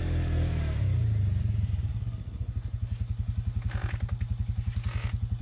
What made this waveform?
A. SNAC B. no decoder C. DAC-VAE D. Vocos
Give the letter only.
B